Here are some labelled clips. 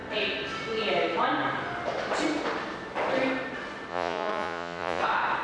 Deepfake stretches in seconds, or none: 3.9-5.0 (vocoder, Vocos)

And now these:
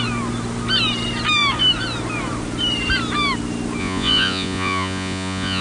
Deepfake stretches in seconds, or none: 3.8-5.6 (vocoder, Vocos)

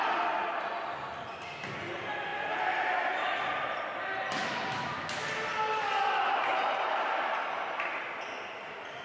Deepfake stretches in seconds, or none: none

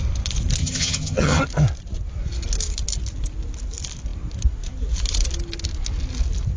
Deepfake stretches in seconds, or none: 0.6-1.4 (vocoder, HiFi-GAN)

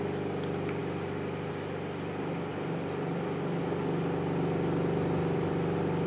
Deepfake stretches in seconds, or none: 2.5-3.6 (vocoder, BigVGAN v2)

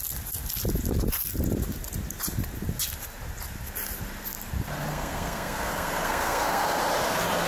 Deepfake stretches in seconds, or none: 4.9-6.8 (codec, SNAC)